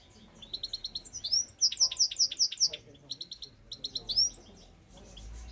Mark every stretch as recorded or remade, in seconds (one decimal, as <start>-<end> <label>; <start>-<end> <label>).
0.0-5.5 recorded